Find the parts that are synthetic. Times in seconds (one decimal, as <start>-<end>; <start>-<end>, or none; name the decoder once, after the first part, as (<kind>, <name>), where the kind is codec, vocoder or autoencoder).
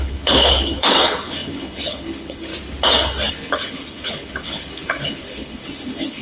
0.0-2.5 (codec, HILCodec); 3.3-6.2